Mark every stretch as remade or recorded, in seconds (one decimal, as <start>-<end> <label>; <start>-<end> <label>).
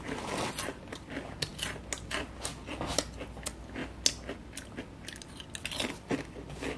0.0-6.8 recorded